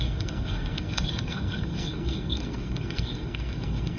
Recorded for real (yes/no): no